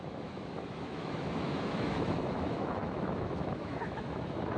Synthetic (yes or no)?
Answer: yes